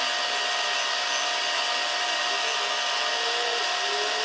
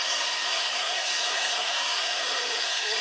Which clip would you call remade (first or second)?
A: second